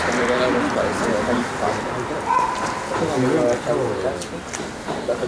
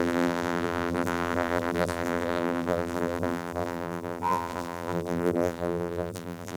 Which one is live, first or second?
first